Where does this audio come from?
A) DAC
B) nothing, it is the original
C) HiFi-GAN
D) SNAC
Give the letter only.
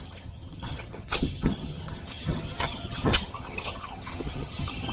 C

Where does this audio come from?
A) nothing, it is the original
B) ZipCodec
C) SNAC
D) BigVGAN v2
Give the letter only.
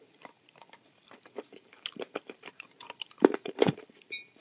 D